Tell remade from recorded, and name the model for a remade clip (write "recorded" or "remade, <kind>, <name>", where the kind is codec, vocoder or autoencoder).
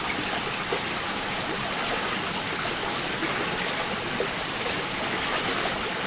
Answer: recorded